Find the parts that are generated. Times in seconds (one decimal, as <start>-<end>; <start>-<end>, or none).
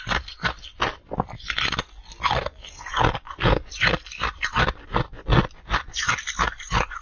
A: none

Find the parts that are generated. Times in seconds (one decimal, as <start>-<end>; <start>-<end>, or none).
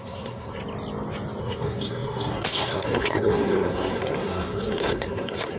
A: 0.0-0.6; 1.4-5.6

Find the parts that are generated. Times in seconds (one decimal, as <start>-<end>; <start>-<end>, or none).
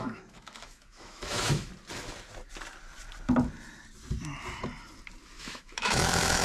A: 0.0-1.7; 5.4-6.4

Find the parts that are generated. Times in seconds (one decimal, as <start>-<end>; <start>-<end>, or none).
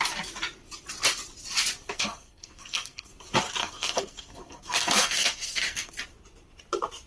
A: 1.9-3.1; 3.6-5.9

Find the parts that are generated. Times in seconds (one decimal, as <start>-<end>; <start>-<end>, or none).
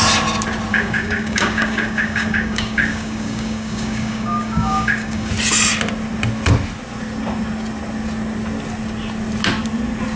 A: 0.7-5.3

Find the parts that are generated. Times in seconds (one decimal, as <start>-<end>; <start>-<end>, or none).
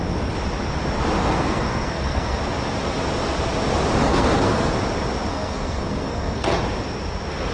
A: 1.2-2.4; 4.0-4.7; 5.3-6.6